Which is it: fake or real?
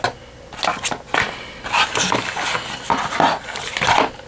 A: real